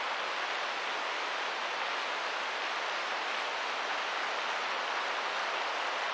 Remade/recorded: recorded